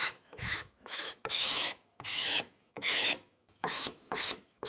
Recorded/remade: remade